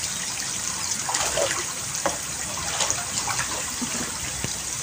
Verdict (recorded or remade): recorded